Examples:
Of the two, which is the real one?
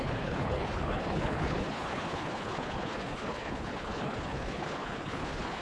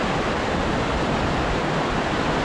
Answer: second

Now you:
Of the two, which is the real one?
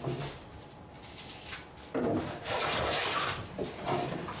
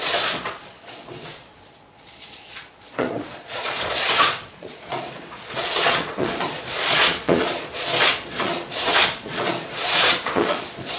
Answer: first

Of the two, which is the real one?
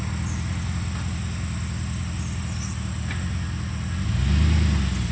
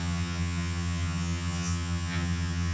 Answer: first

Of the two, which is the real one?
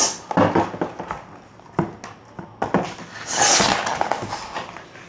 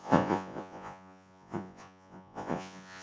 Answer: first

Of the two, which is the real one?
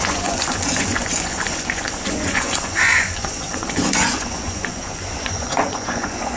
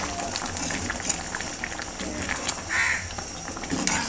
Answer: second